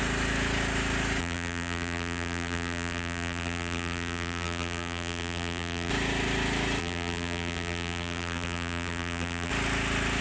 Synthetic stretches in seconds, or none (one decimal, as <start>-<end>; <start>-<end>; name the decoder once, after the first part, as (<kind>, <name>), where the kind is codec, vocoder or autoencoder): 1.2-5.9 (vocoder, BigVGAN v2); 6.8-9.5